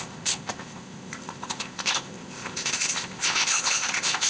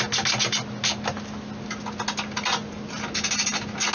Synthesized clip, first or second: first